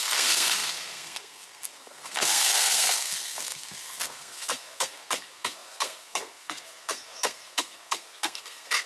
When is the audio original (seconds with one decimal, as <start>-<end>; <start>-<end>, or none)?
none